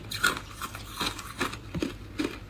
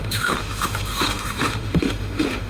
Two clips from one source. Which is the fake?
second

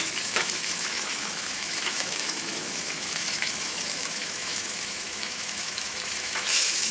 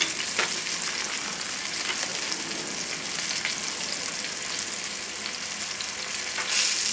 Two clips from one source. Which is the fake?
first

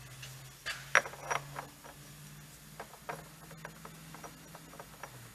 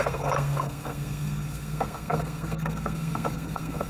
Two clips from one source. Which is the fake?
second